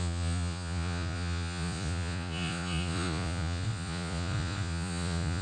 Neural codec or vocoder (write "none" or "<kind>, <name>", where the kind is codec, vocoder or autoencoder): vocoder, Vocos